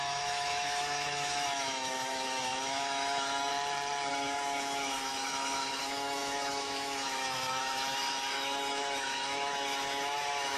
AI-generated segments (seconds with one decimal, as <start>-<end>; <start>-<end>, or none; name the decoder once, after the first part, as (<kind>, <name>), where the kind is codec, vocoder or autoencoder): 0.0-3.5 (autoencoder, DAC-VAE); 4.1-10.6